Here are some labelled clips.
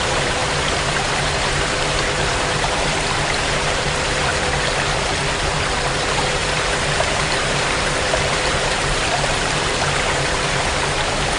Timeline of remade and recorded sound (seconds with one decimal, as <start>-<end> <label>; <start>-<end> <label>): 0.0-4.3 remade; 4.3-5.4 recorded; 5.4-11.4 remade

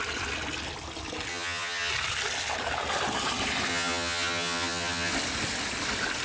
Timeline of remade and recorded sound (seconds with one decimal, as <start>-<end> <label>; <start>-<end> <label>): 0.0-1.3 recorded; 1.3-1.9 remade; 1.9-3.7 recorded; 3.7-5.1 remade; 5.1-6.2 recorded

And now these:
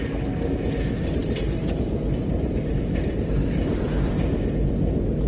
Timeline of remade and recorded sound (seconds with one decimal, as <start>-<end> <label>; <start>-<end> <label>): 0.0-1.2 recorded; 1.2-4.1 remade; 4.1-5.3 recorded

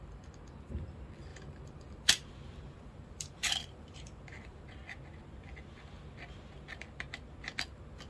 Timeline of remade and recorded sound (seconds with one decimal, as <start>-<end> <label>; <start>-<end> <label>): 0.0-1.3 recorded; 1.3-4.7 remade; 4.7-8.1 recorded